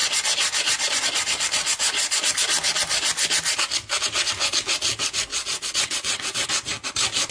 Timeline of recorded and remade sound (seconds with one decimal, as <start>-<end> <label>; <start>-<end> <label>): 0.0-5.3 recorded; 5.3-6.5 remade; 6.5-7.3 recorded